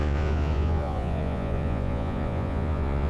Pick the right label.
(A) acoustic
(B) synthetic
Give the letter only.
B